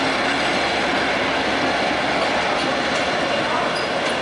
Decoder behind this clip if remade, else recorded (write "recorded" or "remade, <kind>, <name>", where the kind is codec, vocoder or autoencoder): recorded